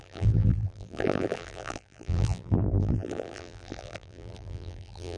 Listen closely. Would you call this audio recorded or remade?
remade